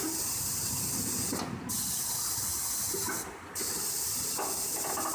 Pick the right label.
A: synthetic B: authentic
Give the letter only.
B